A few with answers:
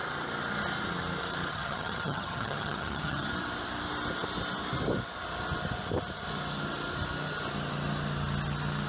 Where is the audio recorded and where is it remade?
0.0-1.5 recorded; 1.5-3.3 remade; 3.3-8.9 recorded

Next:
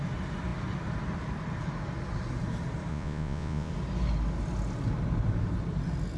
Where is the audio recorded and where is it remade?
0.0-2.9 recorded; 2.9-3.7 remade; 3.7-6.2 recorded

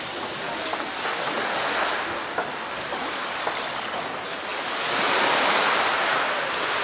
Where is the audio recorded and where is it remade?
0.0-6.8 recorded

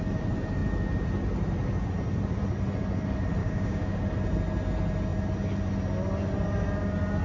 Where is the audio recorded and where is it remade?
0.0-3.4 recorded; 3.4-4.0 remade; 4.0-7.2 recorded

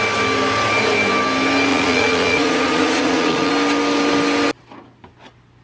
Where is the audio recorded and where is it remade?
0.0-1.7 recorded; 1.7-3.5 remade; 3.5-5.6 recorded